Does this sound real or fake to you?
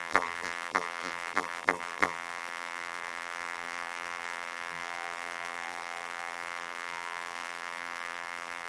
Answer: fake